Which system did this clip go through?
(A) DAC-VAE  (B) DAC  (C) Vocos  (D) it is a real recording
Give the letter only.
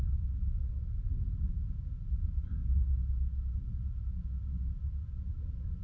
D